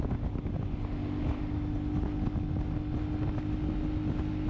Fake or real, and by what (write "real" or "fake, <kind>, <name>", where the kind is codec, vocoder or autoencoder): real